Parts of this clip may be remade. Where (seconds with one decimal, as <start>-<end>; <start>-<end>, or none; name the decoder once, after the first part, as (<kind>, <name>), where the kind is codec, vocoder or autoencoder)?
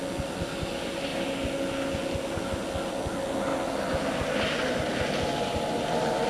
none